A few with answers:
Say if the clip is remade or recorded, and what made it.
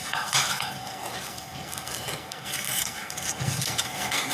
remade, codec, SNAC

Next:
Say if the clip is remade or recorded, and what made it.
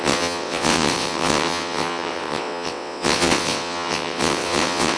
remade, vocoder, WaveNeXt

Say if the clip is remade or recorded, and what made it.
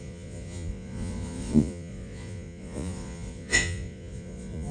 remade, vocoder, Vocos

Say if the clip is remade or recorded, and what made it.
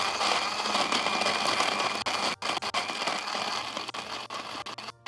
recorded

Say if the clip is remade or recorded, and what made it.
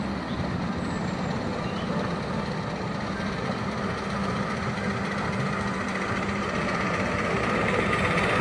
recorded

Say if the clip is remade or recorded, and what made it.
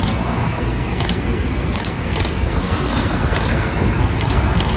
remade, codec, SNAC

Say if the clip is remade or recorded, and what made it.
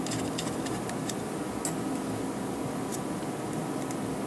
recorded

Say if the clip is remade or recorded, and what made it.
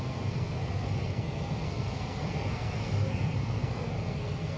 remade, codec, SNAC